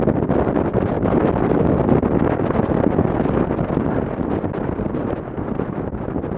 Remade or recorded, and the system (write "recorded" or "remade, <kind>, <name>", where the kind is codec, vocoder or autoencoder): recorded